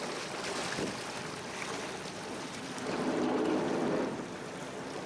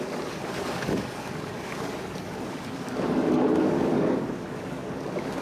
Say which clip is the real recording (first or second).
first